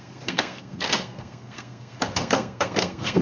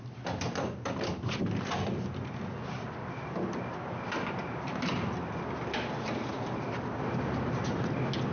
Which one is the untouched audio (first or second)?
second